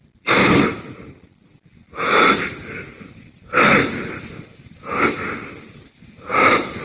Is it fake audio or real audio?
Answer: real